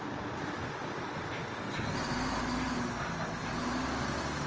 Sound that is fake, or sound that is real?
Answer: real